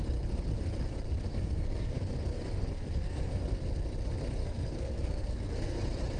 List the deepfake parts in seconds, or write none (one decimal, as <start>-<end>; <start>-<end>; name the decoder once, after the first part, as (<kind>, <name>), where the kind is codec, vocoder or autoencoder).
1.3-2.0 (codec, SNAC); 2.6-3.6; 4.4-5.8